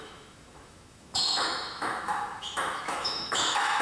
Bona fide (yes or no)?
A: no